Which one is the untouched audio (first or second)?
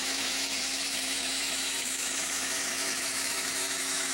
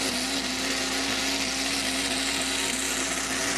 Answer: second